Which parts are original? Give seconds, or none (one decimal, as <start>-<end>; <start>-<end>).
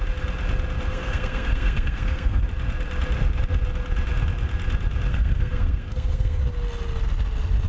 0.0-0.9; 2.4-5.1; 6.4-7.7